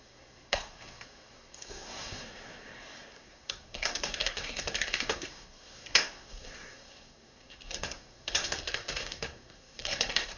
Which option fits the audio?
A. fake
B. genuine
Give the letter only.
A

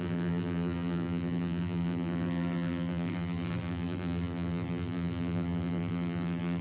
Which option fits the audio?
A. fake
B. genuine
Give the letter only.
A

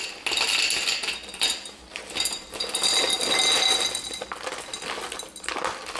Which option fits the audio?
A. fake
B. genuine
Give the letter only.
B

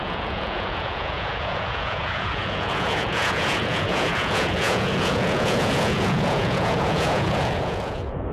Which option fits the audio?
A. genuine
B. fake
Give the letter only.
B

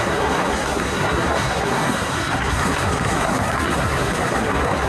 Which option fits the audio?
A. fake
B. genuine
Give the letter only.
A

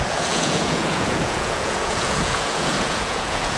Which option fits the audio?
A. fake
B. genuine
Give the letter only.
A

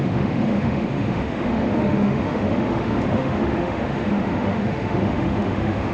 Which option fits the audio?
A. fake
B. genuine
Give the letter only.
A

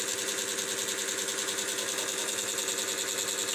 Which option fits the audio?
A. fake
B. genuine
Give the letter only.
B